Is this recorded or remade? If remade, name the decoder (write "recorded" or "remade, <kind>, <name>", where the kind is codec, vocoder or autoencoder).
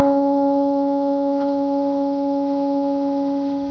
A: remade, autoencoder, DAC-VAE